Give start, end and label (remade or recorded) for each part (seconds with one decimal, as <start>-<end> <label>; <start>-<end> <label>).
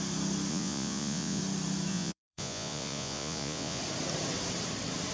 0.0-0.5 recorded; 0.5-1.4 remade; 1.4-1.9 recorded; 1.9-3.8 remade; 3.8-5.1 recorded